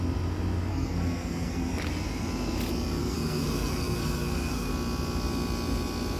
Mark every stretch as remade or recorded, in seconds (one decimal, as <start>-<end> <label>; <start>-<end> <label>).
0.0-0.7 recorded; 0.7-1.7 remade; 1.7-3.0 recorded; 3.0-4.7 remade; 4.7-6.2 recorded